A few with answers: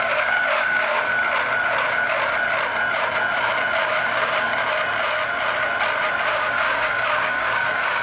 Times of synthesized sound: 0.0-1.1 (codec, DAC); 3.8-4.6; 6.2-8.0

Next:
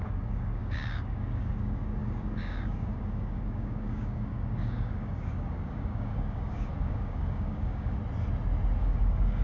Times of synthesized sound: 0.0-8.0 (codec, DAC); 8.8-9.4